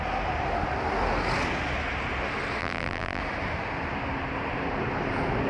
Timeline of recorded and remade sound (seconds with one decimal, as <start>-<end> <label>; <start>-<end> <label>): 0.0-2.6 recorded; 2.6-3.2 remade; 3.2-5.5 recorded